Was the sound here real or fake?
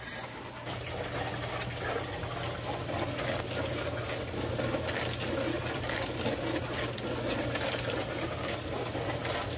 real